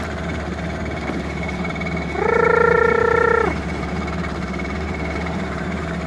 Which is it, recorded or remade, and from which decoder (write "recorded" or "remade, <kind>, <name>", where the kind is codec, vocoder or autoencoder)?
remade, vocoder, BigVGAN v2